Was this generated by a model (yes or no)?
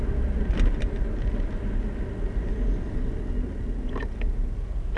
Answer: no